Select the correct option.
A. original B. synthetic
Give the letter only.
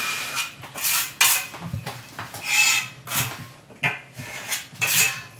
A